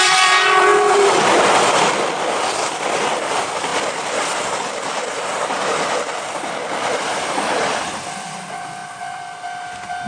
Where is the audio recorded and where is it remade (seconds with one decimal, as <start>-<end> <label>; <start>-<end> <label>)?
0.0-0.7 remade; 0.7-2.3 recorded; 2.3-3.7 remade; 3.7-4.7 recorded; 4.7-10.1 remade